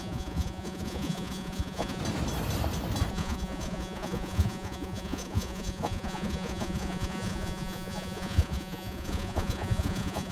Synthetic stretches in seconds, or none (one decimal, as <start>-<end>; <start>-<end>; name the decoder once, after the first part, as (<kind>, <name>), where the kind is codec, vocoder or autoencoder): 0.0-2.0 (vocoder, Vocos); 3.1-10.3